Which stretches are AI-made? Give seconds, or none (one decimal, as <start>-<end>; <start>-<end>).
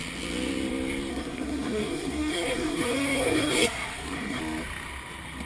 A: 1.1-4.4